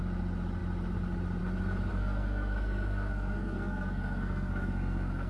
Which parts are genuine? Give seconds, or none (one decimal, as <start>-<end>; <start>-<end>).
0.0-1.9